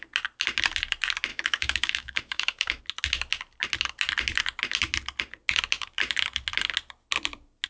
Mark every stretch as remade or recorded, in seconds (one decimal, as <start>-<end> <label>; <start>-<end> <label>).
0.0-1.3 recorded; 1.3-2.8 remade; 2.8-7.7 recorded